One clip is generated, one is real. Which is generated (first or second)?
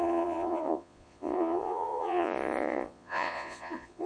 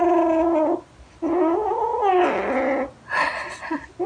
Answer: first